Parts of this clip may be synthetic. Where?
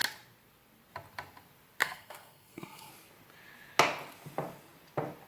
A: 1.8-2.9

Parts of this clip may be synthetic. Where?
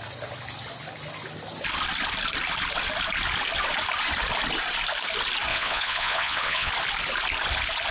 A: 5.5-6.7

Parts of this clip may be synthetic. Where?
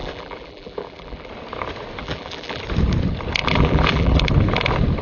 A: 0.0-1.3; 2.0-2.6; 3.4-4.3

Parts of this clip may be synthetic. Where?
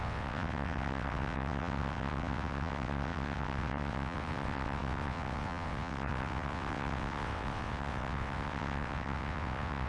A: 0.0-9.9